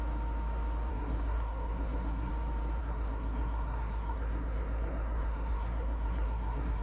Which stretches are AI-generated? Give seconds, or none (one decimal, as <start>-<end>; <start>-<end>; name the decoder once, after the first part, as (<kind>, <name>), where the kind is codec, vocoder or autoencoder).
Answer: 0.9-2.3 (codec, SNAC); 2.8-6.8